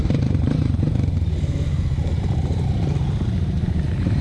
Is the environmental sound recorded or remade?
remade